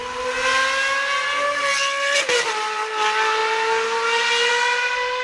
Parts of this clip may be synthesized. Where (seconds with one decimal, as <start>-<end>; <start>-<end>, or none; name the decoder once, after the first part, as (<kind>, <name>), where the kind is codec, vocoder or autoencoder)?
none